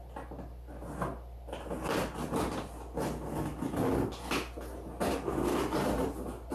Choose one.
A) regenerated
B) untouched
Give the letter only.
B